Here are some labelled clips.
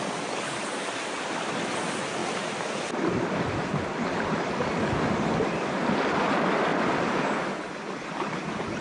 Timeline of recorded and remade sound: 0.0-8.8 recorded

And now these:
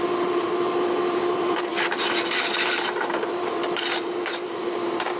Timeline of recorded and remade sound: 0.0-5.2 remade

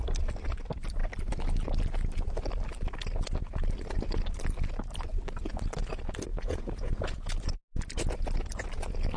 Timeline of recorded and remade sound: 0.0-6.3 recorded; 6.3-7.3 remade; 7.3-9.2 recorded

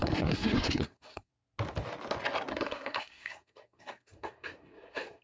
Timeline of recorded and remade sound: 0.0-1.3 remade; 1.3-2.5 recorded; 2.5-5.2 remade